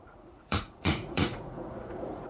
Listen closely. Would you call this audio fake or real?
fake